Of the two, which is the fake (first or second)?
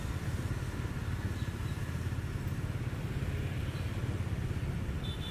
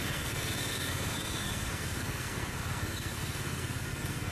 second